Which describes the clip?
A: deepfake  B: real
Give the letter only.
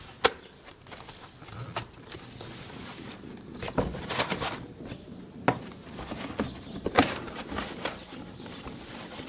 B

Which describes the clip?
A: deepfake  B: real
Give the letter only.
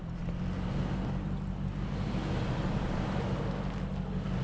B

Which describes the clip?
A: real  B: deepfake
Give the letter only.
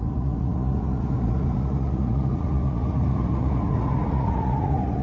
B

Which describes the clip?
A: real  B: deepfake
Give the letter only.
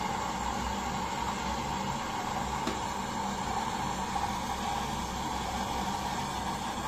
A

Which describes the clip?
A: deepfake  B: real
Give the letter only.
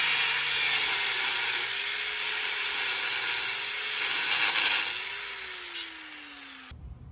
B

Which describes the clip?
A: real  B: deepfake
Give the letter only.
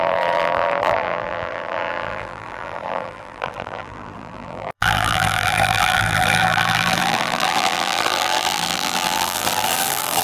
B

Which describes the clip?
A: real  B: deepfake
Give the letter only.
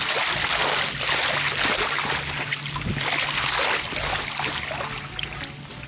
A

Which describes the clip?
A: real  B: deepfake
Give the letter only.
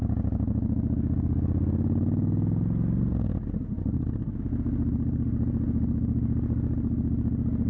A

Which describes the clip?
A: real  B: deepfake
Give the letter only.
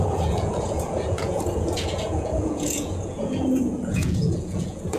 B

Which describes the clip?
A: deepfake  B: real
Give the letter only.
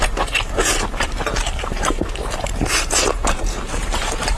A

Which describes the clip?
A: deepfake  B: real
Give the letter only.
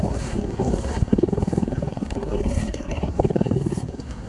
A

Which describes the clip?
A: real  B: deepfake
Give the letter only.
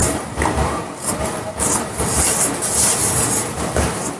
B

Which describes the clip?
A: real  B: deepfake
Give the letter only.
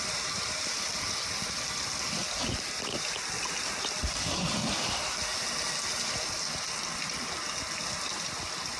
A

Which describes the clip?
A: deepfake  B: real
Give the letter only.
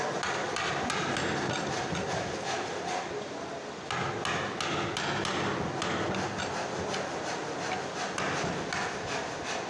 B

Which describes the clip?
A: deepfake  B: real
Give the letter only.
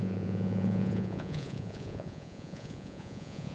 A